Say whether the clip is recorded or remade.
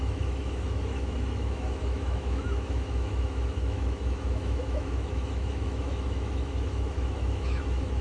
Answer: remade